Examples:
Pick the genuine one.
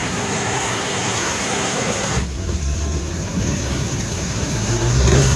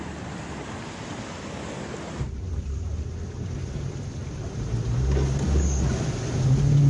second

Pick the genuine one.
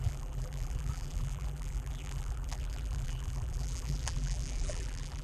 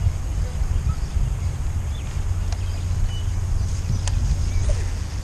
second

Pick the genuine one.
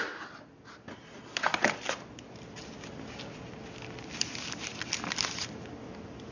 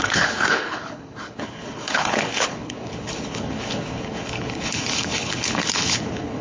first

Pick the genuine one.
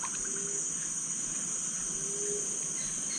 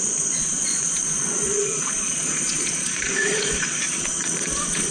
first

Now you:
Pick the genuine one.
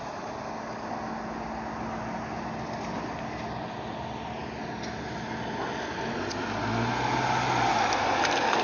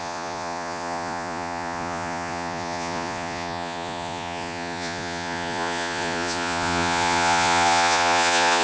first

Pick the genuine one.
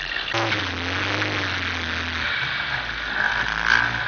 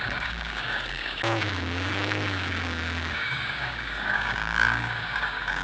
first